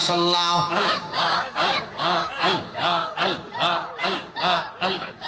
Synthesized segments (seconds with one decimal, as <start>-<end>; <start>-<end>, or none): 0.0-3.1; 4.0-5.3